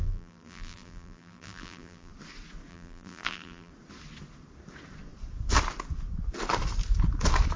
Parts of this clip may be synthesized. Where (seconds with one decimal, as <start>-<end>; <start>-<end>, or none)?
0.0-2.1; 2.7-3.7